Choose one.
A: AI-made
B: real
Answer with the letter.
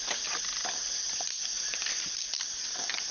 A